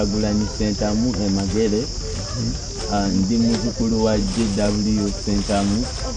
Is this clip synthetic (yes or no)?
no